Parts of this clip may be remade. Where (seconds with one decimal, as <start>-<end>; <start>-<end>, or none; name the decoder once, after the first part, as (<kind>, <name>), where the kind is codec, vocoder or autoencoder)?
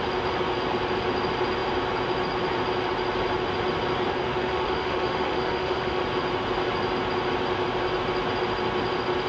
4.2-6.0 (autoencoder, DAC-VAE)